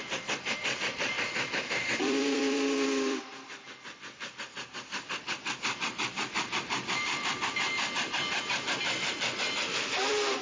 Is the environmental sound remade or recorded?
remade